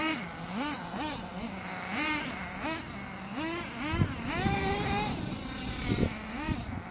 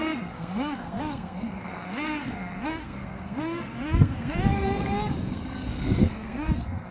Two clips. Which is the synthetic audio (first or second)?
second